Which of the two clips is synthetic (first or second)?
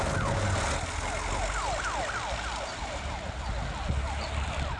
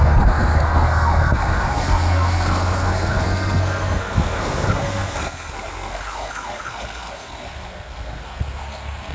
second